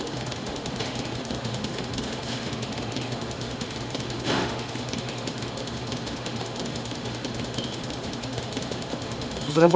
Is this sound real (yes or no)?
no